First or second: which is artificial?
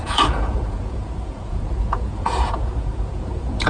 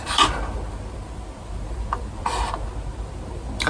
first